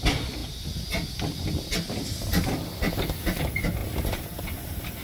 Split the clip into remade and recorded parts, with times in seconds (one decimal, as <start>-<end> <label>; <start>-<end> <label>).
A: 0.0-5.0 recorded